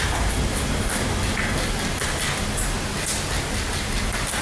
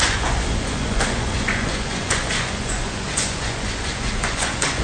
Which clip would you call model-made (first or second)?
second